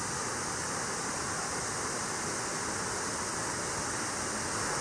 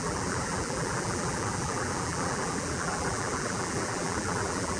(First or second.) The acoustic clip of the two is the first